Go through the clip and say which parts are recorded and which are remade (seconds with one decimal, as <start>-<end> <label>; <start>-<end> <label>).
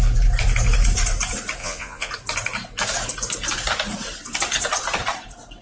0.0-1.6 recorded; 1.6-2.1 remade; 2.1-5.6 recorded